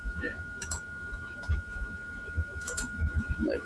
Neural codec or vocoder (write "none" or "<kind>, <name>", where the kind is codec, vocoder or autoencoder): autoencoder, DAC-VAE